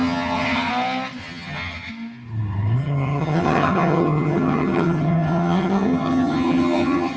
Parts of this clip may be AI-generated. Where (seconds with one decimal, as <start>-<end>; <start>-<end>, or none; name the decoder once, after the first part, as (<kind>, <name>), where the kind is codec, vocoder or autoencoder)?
0.0-0.7 (vocoder, HiFi-GAN); 1.2-1.9; 2.8-7.2